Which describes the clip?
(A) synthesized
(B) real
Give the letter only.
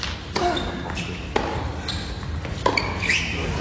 B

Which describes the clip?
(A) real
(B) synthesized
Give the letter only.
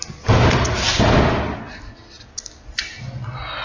A